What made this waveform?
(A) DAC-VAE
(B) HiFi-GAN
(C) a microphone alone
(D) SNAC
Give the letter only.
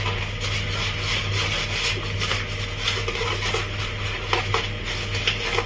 C